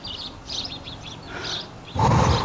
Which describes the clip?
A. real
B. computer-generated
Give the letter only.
B